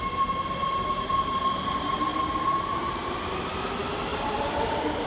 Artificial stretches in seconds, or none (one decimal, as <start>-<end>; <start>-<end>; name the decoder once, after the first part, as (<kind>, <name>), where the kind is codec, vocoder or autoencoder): 4.1-5.1 (vocoder, BigVGAN v2)